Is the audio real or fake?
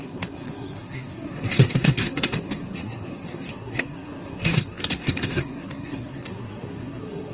fake